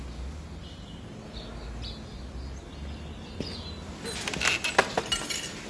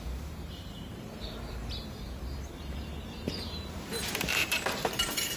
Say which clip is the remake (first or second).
second